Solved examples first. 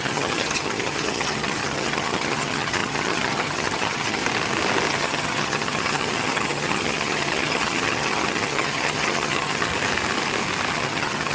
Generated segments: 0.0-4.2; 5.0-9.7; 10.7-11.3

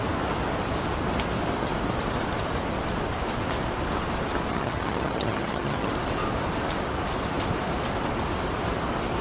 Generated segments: 4.5-5.9

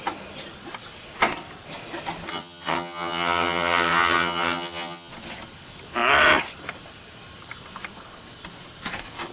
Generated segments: 2.3-5.1

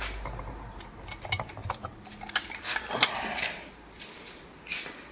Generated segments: none

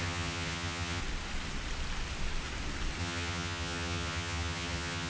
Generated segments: 0.0-1.0; 3.0-5.1

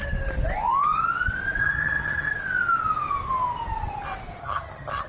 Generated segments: 1.6-2.3; 4.4-5.1